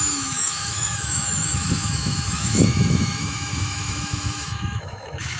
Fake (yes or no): yes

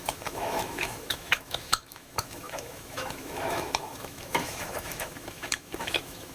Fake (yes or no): yes